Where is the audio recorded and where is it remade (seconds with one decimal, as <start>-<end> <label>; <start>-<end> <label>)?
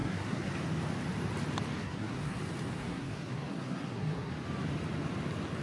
0.0-0.5 remade; 0.5-1.8 recorded; 1.8-2.4 remade; 2.4-2.8 recorded; 2.8-4.3 remade; 4.3-5.6 recorded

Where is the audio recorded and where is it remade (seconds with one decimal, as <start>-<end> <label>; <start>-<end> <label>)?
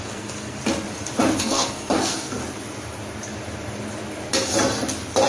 0.0-0.6 remade; 0.6-1.4 recorded; 1.4-2.4 remade; 2.4-5.3 recorded